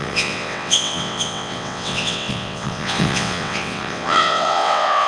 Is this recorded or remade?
remade